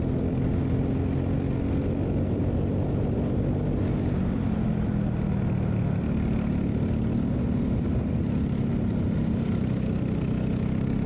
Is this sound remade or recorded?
recorded